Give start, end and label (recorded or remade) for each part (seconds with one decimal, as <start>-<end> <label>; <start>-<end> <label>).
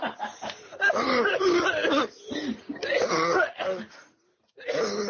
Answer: 0.0-0.7 recorded; 0.7-1.3 remade; 1.3-5.1 recorded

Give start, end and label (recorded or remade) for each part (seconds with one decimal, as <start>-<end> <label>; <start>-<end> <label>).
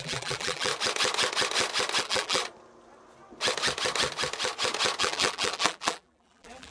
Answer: 0.0-0.7 remade; 0.7-2.0 recorded; 2.0-2.4 remade; 2.4-5.0 recorded; 5.0-6.7 remade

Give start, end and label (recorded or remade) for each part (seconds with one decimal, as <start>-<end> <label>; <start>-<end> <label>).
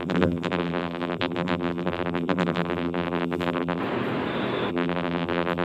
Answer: 0.0-3.8 remade; 3.8-4.7 recorded; 4.7-5.6 remade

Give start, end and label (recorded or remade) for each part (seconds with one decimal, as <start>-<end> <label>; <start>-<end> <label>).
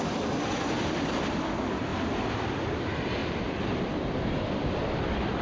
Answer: 0.0-5.4 remade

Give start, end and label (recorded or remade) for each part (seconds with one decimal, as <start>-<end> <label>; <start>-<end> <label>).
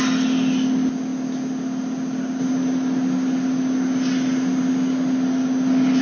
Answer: 0.0-6.0 recorded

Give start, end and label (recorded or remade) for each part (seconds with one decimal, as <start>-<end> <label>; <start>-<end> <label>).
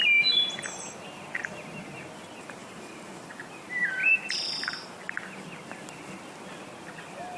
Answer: 0.0-2.6 recorded; 2.6-3.6 remade; 3.6-4.0 recorded; 4.0-5.0 remade; 5.0-7.4 recorded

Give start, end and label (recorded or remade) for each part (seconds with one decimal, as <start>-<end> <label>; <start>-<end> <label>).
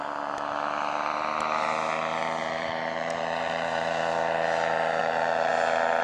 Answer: 0.0-2.4 recorded; 2.4-4.0 remade; 4.0-5.0 recorded; 5.0-5.5 remade; 5.5-6.0 recorded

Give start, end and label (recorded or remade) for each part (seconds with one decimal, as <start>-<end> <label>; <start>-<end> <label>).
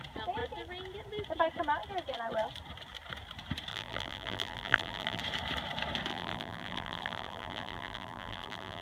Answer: 0.0-3.7 recorded; 3.7-5.2 remade; 5.2-6.1 recorded; 6.1-8.8 remade